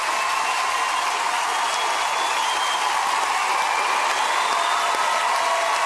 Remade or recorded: recorded